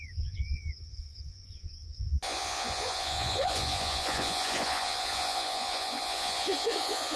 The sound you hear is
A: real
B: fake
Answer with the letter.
B